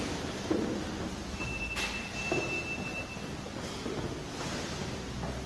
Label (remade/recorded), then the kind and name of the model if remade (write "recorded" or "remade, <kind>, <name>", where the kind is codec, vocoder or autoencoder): recorded